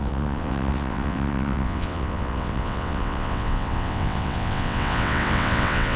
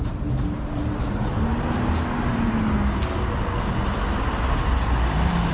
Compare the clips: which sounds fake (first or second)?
first